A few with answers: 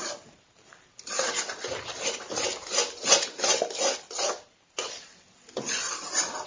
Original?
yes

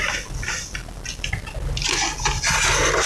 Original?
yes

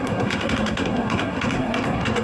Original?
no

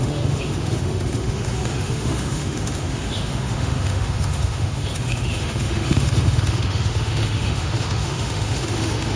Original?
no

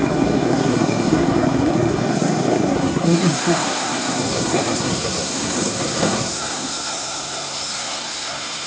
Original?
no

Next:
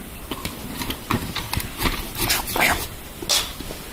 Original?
yes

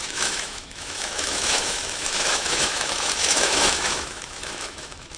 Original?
no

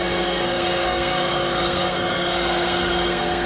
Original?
no